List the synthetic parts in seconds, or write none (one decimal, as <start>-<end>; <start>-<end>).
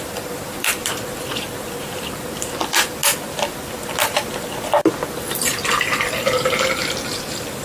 0.0-3.0; 3.5-7.6